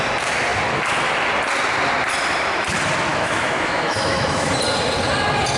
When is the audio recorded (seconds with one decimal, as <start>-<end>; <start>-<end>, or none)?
0.0-3.1; 4.5-5.6